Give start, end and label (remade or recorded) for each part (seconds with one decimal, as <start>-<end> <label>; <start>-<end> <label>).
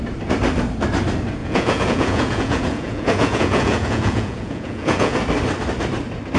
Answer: 0.0-1.4 recorded; 1.4-5.2 remade; 5.2-6.4 recorded